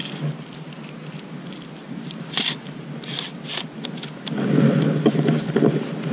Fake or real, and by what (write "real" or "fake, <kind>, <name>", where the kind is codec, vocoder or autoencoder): real